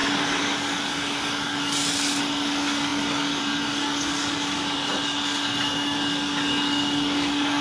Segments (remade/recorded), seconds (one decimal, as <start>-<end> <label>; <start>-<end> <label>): 0.0-7.6 remade